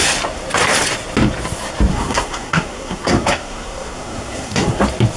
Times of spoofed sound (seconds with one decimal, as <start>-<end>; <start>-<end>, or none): 1.9-4.8